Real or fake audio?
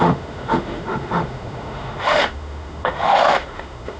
fake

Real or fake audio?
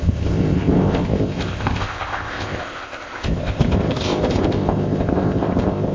fake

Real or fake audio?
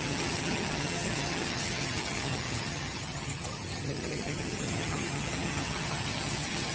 fake